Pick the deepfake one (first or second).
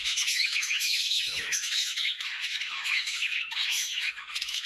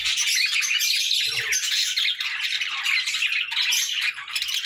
first